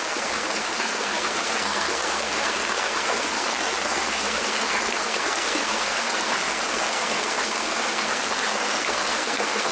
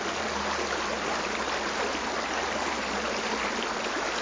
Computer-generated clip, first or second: first